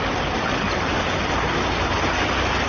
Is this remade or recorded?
recorded